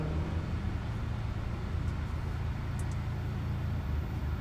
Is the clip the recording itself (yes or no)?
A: yes